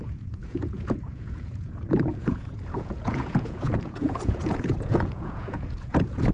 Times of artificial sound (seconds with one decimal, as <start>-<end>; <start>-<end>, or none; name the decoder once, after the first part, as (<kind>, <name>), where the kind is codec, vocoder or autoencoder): 0.0-6.3 (vocoder, Vocos)